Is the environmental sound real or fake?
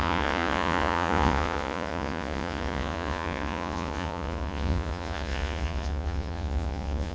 fake